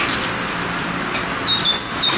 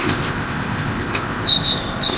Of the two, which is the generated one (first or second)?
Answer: second